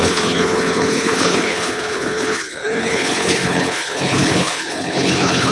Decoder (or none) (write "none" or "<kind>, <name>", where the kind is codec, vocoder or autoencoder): codec, HILCodec